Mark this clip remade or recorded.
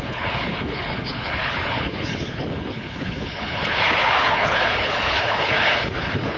remade